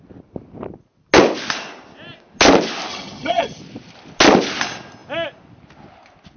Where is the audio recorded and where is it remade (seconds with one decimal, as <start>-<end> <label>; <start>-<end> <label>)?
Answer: 0.0-2.9 recorded; 2.9-3.6 remade; 3.6-6.4 recorded